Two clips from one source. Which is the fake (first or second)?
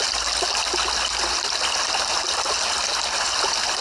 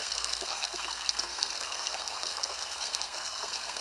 second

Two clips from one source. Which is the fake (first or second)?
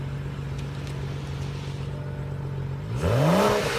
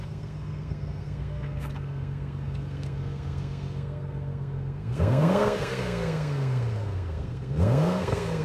second